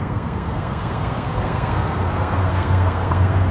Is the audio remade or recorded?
remade